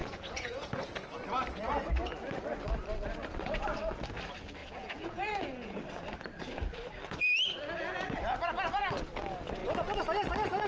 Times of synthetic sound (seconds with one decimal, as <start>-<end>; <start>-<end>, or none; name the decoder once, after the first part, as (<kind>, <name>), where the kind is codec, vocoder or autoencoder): 0.0-0.8 (vocoder, Vocos); 4.6-5.8